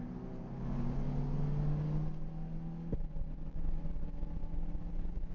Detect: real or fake real